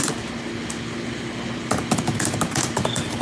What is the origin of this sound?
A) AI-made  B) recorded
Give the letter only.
B